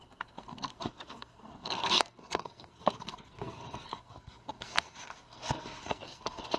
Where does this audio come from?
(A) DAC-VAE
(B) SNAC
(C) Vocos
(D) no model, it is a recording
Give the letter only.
B